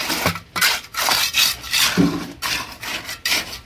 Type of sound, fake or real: real